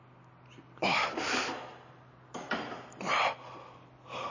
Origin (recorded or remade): recorded